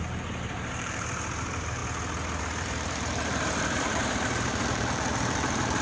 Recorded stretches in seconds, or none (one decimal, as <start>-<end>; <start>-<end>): 1.8-2.4